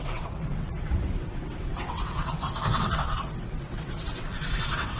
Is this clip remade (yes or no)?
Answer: yes